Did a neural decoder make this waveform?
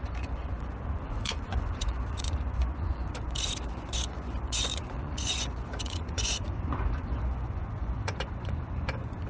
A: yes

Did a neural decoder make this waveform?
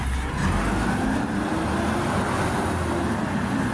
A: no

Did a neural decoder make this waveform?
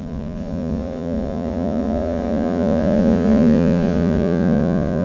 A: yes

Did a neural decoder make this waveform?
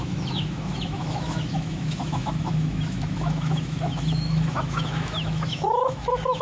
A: yes